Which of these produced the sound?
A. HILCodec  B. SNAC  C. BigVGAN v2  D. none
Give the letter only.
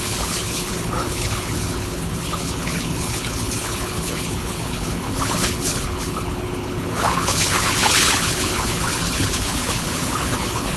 A